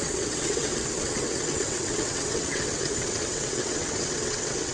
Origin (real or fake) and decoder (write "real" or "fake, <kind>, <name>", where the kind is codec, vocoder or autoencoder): fake, vocoder, WaveNeXt